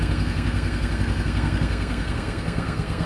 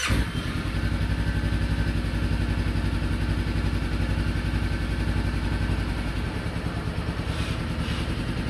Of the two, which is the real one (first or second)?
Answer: second